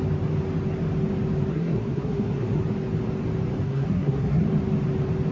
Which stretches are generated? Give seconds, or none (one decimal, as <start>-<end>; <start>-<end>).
1.5-2.6; 3.6-4.4